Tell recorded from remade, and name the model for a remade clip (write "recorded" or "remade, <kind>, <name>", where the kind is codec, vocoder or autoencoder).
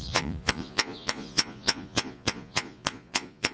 remade, vocoder, Vocos